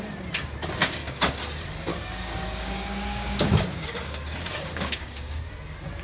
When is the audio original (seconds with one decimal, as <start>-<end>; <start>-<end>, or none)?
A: 0.0-0.8; 1.4-1.9; 5.5-6.0